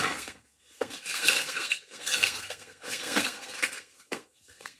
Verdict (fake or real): fake